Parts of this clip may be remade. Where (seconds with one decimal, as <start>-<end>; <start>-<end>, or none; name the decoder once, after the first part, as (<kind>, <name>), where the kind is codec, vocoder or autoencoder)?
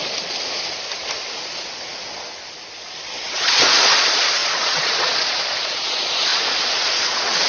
3.3-7.5 (vocoder, Vocos)